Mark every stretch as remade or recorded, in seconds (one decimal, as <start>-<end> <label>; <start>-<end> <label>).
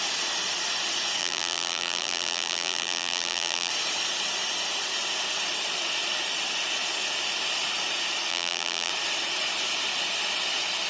0.0-1.2 recorded; 1.2-3.7 remade; 3.7-8.3 recorded; 8.3-8.9 remade; 8.9-10.9 recorded